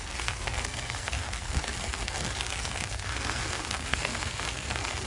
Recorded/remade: remade